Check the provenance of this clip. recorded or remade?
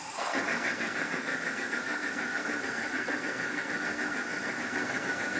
remade